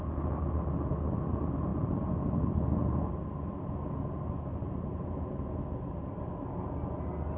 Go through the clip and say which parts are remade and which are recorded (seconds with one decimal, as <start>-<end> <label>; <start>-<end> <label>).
0.0-7.4 recorded